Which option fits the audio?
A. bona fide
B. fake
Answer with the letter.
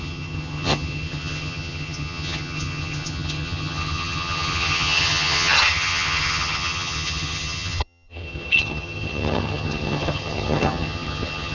B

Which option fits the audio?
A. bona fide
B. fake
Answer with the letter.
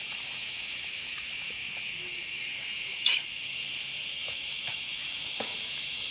B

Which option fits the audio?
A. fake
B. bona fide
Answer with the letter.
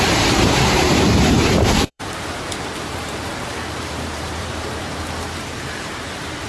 A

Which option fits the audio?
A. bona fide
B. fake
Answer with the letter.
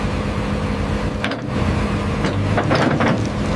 A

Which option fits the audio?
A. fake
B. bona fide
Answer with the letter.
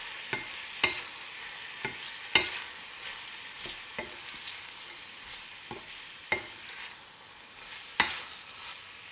B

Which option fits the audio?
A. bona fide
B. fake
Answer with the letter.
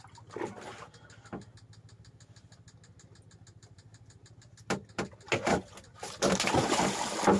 A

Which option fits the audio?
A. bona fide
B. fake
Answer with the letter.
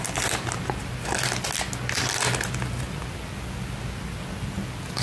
A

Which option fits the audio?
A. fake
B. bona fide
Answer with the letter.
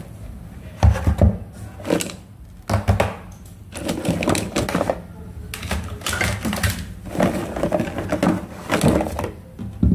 B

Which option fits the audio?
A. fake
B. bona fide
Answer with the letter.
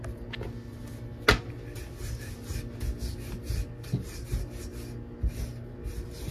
B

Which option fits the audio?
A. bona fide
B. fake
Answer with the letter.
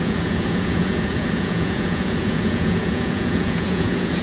B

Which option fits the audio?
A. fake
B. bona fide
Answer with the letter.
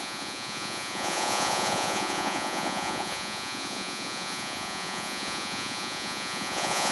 A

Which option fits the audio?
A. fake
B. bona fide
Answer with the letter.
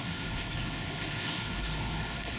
A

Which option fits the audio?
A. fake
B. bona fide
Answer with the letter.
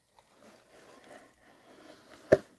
B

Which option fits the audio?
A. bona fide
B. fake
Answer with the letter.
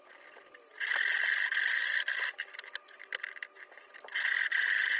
A